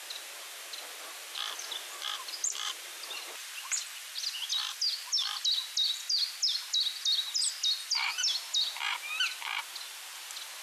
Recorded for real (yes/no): yes